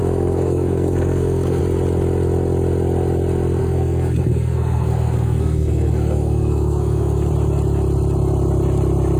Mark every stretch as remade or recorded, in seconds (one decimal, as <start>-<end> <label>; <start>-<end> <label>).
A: 0.0-1.6 remade; 1.6-3.6 recorded; 3.6-7.3 remade; 7.3-9.2 recorded